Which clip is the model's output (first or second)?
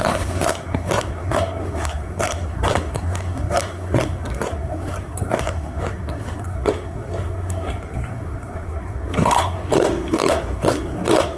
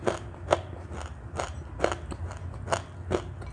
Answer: first